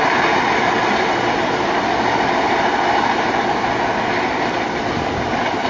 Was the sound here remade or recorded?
recorded